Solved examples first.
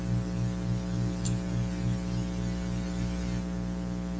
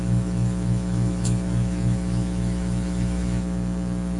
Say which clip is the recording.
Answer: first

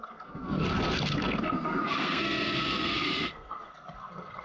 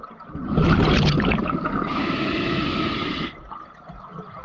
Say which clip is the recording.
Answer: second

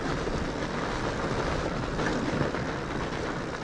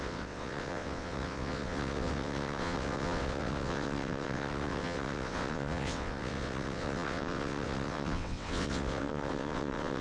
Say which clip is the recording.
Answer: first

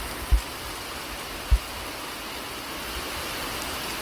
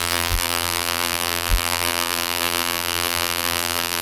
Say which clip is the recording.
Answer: first